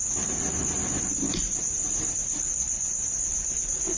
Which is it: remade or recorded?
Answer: recorded